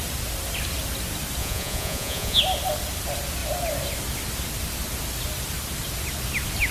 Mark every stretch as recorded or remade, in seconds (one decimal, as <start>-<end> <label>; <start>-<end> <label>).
0.0-1.4 recorded; 1.4-2.4 remade; 2.4-6.7 recorded